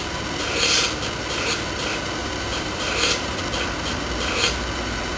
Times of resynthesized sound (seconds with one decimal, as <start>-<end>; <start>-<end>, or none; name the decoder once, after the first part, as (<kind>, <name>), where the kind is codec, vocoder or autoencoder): 2.2-3.4 (vocoder, BigVGAN v2)